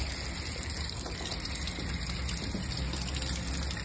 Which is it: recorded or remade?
recorded